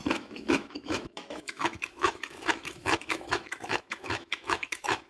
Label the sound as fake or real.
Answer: fake